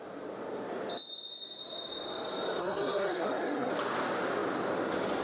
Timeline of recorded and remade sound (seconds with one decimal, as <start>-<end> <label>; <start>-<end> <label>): 0.0-2.6 recorded; 2.6-3.7 remade; 3.7-5.2 recorded